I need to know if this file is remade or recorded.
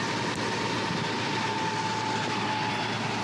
recorded